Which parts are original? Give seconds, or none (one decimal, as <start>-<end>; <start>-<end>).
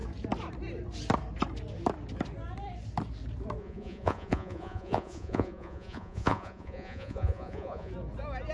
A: 0.0-3.6; 7.9-8.5